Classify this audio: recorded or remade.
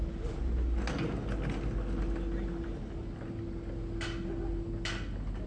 recorded